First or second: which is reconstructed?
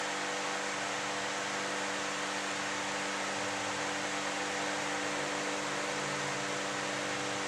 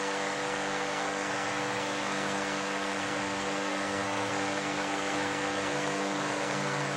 second